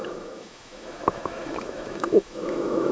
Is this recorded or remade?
remade